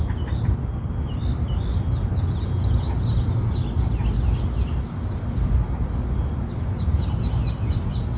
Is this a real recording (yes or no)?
yes